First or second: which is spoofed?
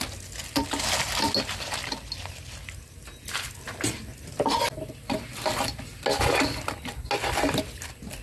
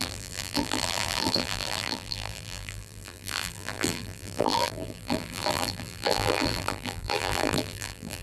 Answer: second